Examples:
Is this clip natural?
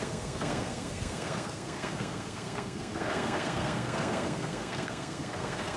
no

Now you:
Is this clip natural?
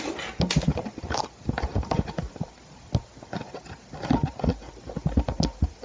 yes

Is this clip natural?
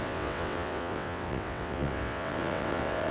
no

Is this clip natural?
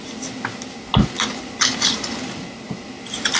yes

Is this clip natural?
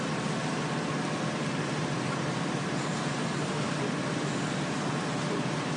yes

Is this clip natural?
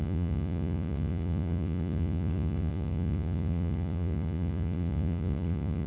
no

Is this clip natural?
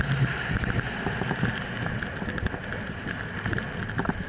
yes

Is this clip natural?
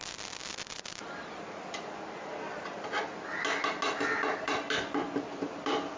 yes